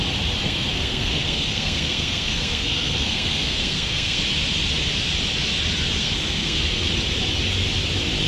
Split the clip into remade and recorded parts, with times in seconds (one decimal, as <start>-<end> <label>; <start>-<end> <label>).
0.0-0.4 recorded; 0.4-4.2 remade; 4.2-6.0 recorded; 6.0-6.9 remade; 6.9-8.3 recorded